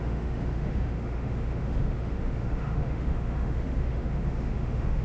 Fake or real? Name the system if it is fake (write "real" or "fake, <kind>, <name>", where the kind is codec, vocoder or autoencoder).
fake, autoencoder, DAC-VAE